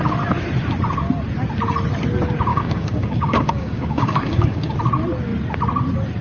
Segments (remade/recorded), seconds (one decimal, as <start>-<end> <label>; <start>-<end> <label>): 0.0-2.5 recorded; 2.5-4.8 remade; 4.8-6.2 recorded